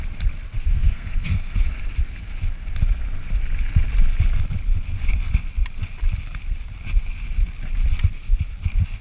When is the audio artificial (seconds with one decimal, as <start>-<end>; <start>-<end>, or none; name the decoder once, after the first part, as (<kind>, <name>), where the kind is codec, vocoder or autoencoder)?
0.7-1.8 (codec, SNAC)